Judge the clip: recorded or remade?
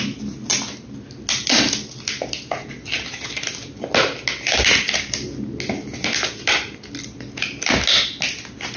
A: recorded